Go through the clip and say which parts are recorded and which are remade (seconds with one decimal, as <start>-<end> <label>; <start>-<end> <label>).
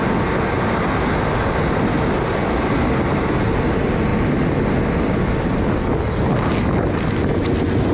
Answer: 0.0-7.9 recorded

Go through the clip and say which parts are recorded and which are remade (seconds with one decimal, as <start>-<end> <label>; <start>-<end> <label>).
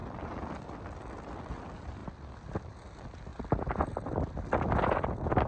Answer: 0.0-0.6 remade; 0.6-3.3 recorded; 3.3-5.5 remade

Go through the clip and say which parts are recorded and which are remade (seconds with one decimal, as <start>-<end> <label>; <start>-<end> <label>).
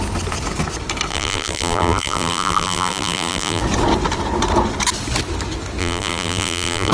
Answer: 0.0-1.1 recorded; 1.1-3.6 remade; 3.6-5.8 recorded; 5.8-6.9 remade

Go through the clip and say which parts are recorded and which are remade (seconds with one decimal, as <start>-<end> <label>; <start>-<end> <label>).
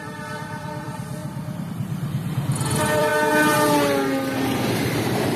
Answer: 0.0-3.1 remade; 3.1-4.7 recorded; 4.7-5.4 remade